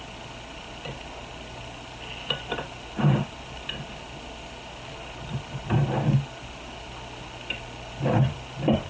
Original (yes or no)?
yes